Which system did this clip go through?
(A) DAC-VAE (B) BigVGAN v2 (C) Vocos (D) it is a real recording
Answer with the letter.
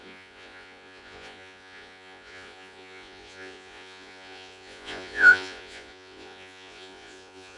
C